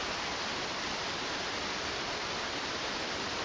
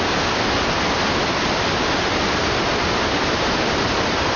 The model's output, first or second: first